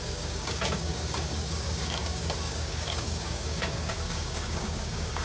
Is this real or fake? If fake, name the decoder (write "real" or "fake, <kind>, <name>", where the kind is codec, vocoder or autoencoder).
fake, codec, DAC